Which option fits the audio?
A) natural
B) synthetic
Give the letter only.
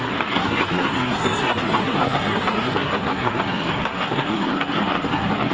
B